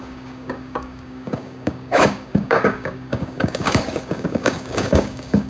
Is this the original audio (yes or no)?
no